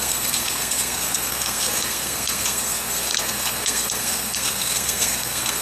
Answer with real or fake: fake